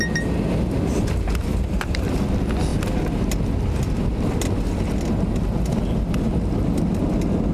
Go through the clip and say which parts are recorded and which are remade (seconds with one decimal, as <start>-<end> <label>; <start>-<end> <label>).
0.0-1.5 recorded; 1.5-2.0 remade; 2.0-2.7 recorded; 2.7-3.3 remade; 3.3-7.5 recorded